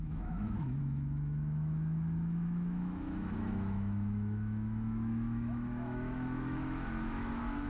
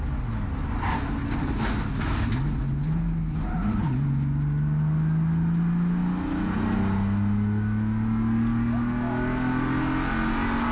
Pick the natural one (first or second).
second